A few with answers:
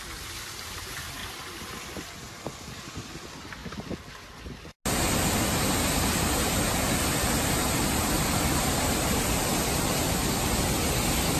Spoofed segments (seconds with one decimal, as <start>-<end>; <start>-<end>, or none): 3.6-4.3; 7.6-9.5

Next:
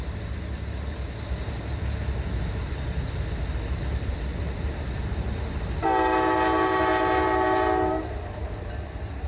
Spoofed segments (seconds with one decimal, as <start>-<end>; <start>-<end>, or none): 4.3-5.4

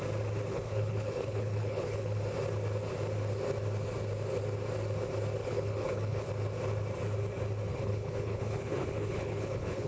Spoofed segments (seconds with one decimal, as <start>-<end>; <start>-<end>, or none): 0.5-2.2; 5.4-6.3; 7.7-9.9